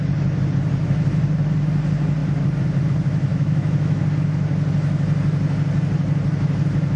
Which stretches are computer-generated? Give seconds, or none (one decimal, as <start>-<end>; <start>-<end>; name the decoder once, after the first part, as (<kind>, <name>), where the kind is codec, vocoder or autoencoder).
3.3-4.0 (autoencoder, DAC-VAE)